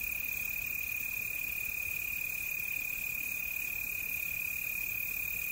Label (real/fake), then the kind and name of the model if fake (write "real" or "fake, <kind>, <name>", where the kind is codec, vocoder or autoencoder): real